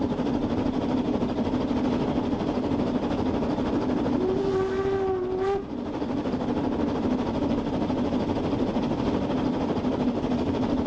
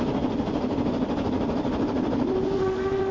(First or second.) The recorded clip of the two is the first